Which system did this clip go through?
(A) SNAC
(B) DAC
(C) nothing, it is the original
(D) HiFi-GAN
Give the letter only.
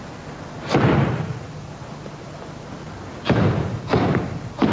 C